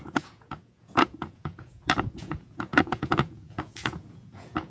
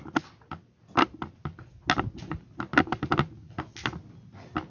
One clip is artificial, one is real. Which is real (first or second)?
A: second